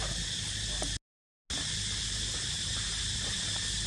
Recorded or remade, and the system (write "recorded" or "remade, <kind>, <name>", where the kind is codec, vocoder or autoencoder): recorded